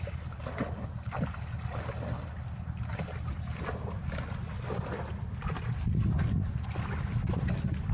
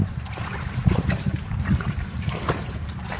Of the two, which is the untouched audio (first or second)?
first